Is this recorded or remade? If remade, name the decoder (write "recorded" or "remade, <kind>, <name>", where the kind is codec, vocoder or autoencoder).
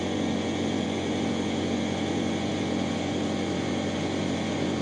remade, vocoder, Vocos